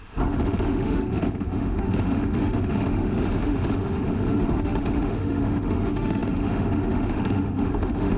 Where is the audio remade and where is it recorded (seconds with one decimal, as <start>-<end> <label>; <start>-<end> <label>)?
0.0-8.2 remade